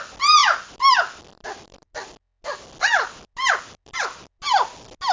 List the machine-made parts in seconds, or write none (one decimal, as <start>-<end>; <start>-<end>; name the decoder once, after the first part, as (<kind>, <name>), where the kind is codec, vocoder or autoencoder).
none